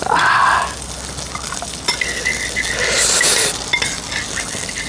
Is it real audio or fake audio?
real